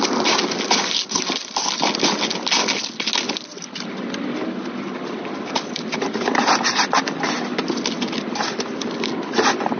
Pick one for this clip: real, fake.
real